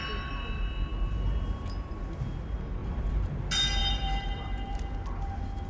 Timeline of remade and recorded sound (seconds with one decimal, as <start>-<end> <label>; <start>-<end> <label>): 0.0-0.9 recorded; 0.9-2.0 remade; 2.0-2.8 recorded; 2.8-3.4 remade; 3.4-3.8 recorded; 3.8-4.8 remade; 4.8-5.7 recorded